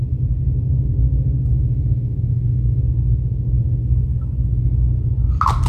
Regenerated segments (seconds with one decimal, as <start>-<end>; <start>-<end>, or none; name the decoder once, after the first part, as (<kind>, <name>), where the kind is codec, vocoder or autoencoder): 1.5-2.8 (autoencoder, DAC-VAE)